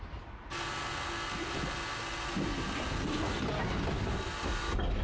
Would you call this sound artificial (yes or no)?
no